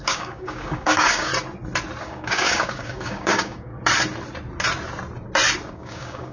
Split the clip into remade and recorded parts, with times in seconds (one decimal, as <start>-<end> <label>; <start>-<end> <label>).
0.0-1.3 remade; 1.3-2.0 recorded; 2.0-3.7 remade; 3.7-5.7 recorded; 5.7-6.3 remade